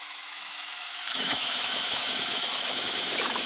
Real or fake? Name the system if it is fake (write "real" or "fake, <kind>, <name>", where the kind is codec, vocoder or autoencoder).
fake, autoencoder, DAC-VAE